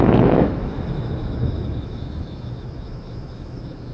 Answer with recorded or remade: remade